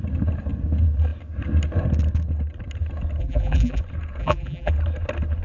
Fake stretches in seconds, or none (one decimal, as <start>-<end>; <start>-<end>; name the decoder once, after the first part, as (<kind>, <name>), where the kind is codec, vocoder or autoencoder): 3.2-3.8 (vocoder, BigVGAN v2); 4.2-4.7